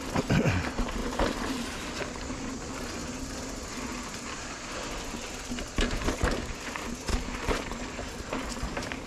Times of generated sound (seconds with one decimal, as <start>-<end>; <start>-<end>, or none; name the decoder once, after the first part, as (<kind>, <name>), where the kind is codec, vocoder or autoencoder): 1.0-1.9 (vocoder, BigVGAN v2); 7.1-8.2